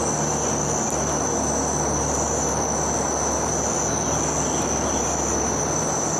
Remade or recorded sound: recorded